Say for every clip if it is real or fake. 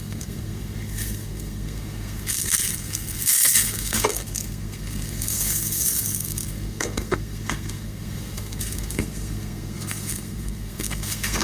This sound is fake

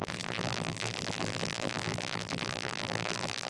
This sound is fake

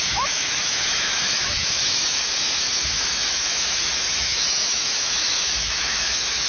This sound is fake